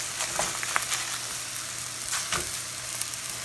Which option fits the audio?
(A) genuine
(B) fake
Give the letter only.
A